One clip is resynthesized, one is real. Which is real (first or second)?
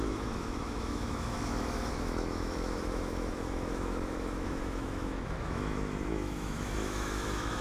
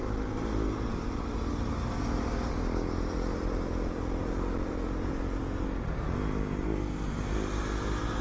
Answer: second